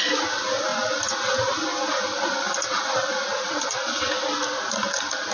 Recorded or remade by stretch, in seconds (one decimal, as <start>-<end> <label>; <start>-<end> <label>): 0.0-5.3 recorded